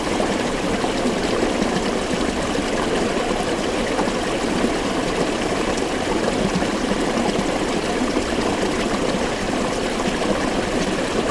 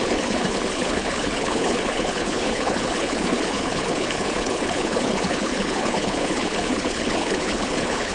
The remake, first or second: second